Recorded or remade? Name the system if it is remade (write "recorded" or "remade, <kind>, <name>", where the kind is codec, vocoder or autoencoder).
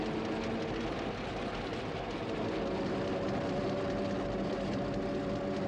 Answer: recorded